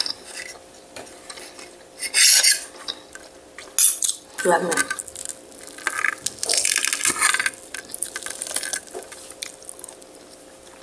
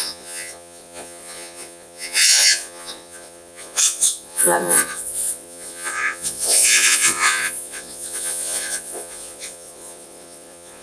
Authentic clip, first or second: first